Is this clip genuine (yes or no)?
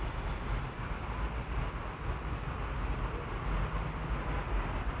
yes